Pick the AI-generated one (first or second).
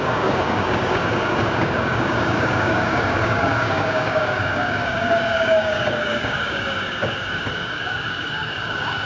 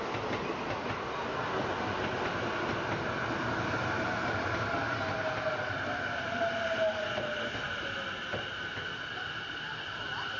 first